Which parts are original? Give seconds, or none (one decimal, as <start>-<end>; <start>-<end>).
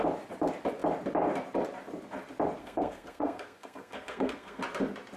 0.0-2.6; 4.6-5.2